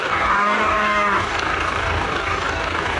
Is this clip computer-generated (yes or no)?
yes